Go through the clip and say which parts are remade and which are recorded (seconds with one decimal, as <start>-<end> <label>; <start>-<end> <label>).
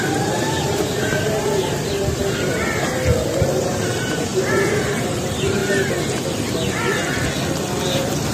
0.0-2.2 remade; 2.2-3.6 recorded; 3.6-5.6 remade; 5.6-7.9 recorded; 7.9-8.3 remade